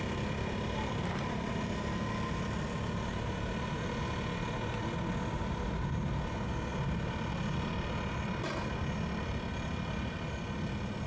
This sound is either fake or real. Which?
real